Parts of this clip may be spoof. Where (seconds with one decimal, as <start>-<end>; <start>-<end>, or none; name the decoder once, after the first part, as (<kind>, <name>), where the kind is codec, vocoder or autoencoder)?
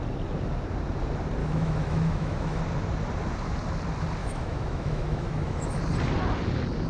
1.4-2.6 (autoencoder, DAC-VAE); 4.2-5.8